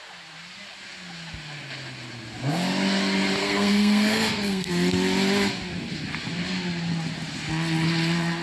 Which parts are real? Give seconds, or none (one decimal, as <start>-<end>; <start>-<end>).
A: 0.0-3.4; 4.7-8.4